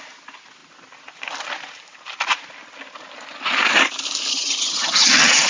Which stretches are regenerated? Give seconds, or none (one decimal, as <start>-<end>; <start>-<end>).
4.3-5.5